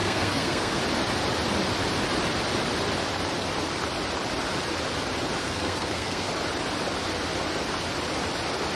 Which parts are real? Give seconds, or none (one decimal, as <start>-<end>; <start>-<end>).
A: 0.8-5.4; 6.3-8.7